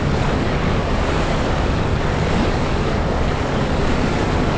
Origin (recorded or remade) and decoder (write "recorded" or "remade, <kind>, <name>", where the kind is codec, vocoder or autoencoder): remade, codec, DAC